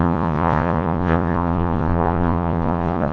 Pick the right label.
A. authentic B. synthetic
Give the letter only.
B